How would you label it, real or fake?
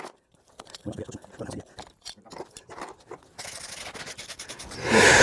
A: real